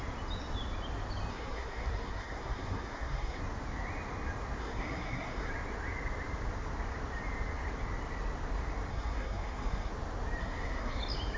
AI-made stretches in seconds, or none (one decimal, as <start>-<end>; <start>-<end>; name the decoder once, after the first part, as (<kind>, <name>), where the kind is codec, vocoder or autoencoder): 1.3-3.4 (codec, SNAC); 4.6-5.5; 8.9-9.9; 10.4-11.0